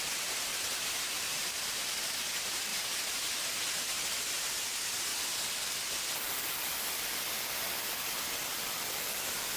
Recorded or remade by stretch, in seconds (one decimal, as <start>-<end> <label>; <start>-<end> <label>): 0.0-0.5 recorded; 0.5-2.1 remade; 2.1-2.7 recorded; 2.7-4.2 remade; 4.2-9.6 recorded